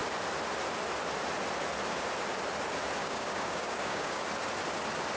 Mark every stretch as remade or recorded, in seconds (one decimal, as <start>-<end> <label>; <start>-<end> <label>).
0.0-3.0 recorded; 3.0-4.2 remade; 4.2-5.2 recorded